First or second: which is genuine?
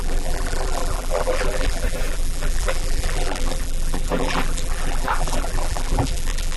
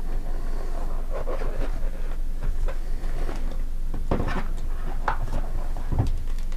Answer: second